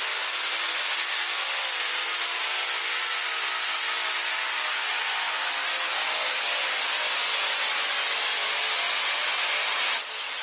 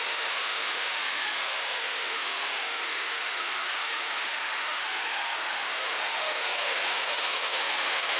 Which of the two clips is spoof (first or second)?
second